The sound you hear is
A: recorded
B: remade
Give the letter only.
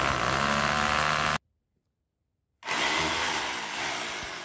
A